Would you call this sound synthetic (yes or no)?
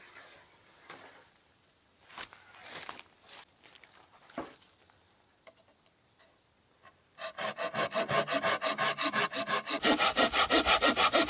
no